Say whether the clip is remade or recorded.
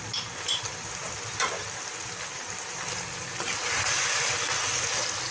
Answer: recorded